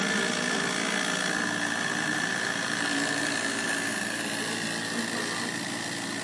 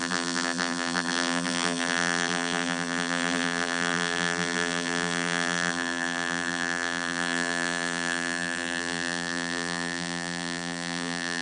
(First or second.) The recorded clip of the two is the first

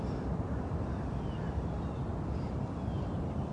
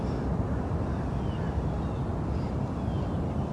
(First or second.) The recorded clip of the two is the second